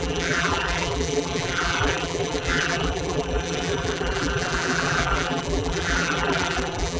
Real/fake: fake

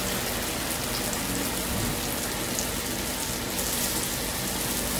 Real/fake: real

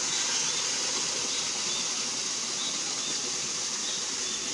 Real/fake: real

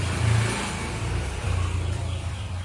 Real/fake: fake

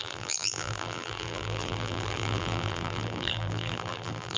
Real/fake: fake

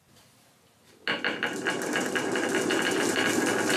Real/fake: real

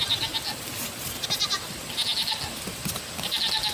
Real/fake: real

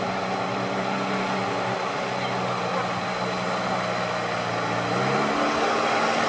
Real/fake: real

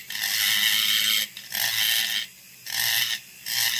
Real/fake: real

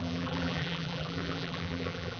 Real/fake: fake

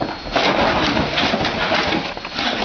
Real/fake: real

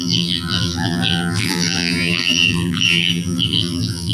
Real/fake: fake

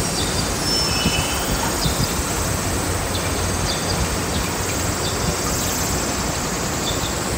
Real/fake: real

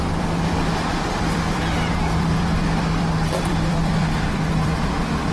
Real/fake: fake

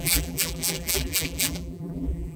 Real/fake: fake